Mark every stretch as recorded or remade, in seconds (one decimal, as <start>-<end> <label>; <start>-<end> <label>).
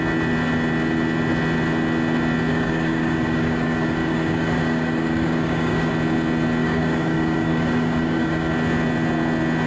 0.0-2.5 recorded; 2.5-5.9 remade; 5.9-6.6 recorded; 6.6-8.5 remade; 8.5-9.7 recorded